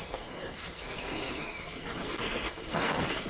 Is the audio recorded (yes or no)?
no